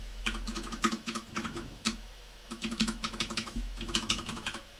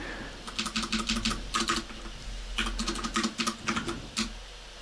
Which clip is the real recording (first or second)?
second